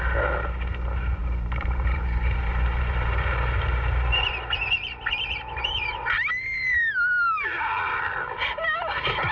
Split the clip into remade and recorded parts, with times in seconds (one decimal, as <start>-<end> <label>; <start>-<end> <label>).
0.0-1.2 recorded; 1.2-4.3 remade; 4.3-9.3 recorded